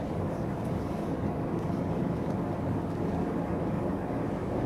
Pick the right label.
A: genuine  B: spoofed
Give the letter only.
B